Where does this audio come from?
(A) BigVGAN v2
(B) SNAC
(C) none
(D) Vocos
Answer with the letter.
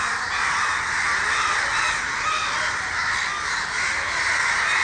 C